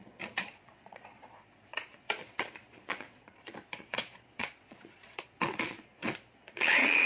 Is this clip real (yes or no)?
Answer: no